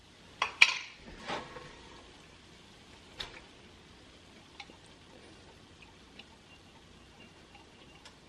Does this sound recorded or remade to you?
remade